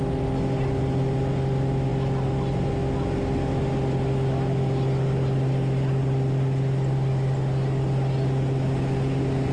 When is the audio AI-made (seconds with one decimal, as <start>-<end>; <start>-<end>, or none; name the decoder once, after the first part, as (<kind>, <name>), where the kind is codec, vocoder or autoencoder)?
none